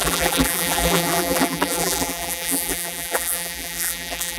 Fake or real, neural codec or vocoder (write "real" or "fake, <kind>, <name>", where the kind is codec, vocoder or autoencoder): fake, vocoder, BigVGAN v2